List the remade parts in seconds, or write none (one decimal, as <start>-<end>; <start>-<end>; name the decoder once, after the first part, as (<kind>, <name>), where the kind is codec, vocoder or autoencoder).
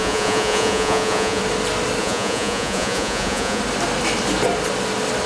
0.0-1.4 (vocoder, Vocos); 2.0-3.6